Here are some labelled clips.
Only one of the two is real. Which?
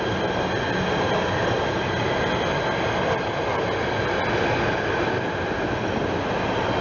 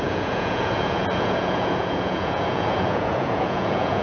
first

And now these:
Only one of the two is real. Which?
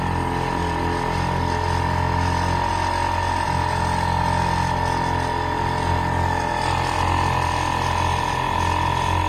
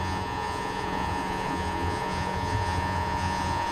first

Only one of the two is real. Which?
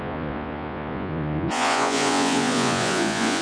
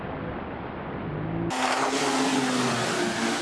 second